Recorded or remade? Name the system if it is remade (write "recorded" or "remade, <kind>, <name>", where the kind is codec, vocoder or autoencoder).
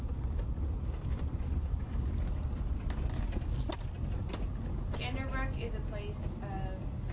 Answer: recorded